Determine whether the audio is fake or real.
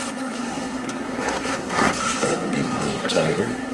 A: fake